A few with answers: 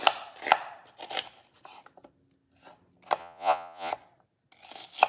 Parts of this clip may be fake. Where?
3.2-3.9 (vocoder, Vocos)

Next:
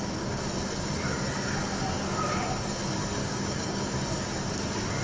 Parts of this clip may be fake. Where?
3.2-3.8 (codec, DAC)

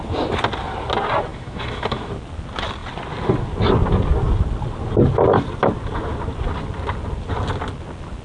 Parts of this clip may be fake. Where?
1.3-2.1 (autoencoder, DAC-VAE)

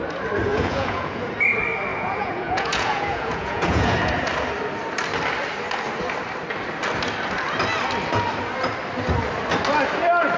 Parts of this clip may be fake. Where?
0.5-1.2 (vocoder, Vocos); 1.9-4.1

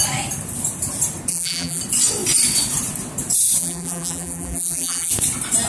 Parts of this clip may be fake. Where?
1.3-1.8 (vocoder, BigVGAN v2); 3.6-5.1